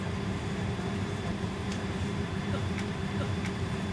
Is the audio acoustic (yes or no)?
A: no